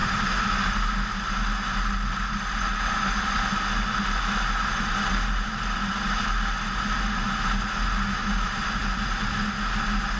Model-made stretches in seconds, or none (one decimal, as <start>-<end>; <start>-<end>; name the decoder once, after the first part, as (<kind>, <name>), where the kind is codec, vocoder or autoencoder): none